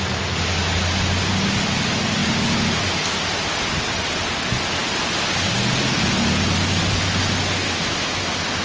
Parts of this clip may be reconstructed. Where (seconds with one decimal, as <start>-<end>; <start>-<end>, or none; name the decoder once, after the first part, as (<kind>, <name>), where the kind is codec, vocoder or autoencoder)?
7.6-8.2 (autoencoder, DAC-VAE)